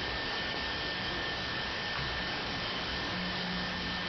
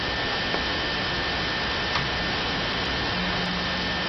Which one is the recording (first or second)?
second